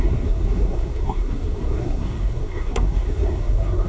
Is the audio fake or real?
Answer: fake